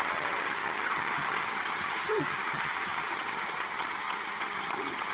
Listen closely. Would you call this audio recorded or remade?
remade